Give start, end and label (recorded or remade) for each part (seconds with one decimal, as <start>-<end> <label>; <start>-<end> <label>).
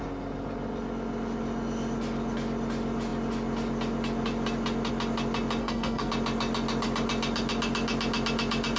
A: 0.0-5.6 recorded; 5.6-6.1 remade; 6.1-8.8 recorded